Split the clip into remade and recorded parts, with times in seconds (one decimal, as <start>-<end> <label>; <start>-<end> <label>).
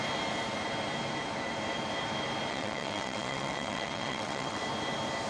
0.0-2.5 recorded; 2.5-4.6 remade; 4.6-5.3 recorded